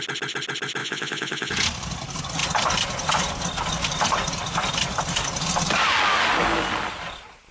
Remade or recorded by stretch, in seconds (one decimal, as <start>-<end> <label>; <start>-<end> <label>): 0.0-0.8 recorded; 0.8-1.5 remade; 1.5-7.5 recorded